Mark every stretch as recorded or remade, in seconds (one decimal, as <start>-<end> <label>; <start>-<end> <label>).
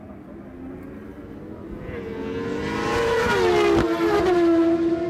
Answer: 0.0-5.1 recorded